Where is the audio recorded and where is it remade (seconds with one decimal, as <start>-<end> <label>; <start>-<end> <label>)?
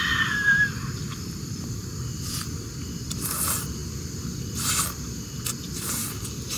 0.0-6.6 recorded